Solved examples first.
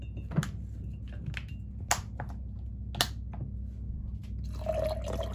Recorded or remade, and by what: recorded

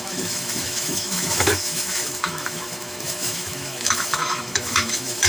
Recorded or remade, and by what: remade, autoencoder, DAC-VAE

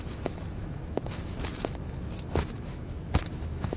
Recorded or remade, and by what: remade, autoencoder, DAC-VAE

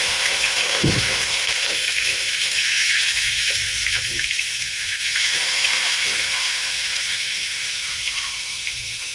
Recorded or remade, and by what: remade, autoencoder, DAC-VAE